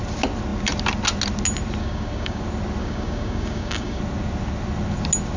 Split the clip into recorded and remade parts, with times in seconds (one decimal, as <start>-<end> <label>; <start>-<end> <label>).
0.0-1.8 recorded; 1.8-2.4 remade; 2.4-2.8 recorded; 2.8-4.0 remade; 4.0-5.4 recorded